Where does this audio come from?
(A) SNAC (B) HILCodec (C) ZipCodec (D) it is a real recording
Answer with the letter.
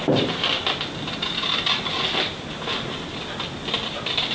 D